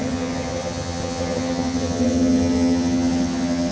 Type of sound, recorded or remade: remade